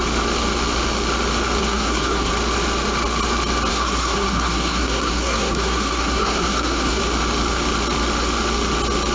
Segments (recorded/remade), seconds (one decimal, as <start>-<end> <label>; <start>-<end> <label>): 0.0-1.6 recorded; 1.6-2.3 remade; 2.3-3.7 recorded; 3.7-7.0 remade; 7.0-9.1 recorded